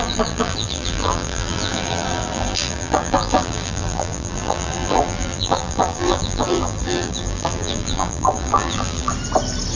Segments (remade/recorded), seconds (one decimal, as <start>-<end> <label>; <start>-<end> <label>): 0.0-9.1 remade; 9.1-9.8 recorded